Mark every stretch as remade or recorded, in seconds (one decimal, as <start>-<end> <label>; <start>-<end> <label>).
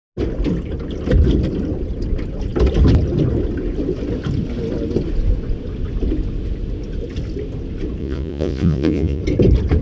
0.0-8.0 recorded; 8.0-9.2 remade; 9.2-9.8 recorded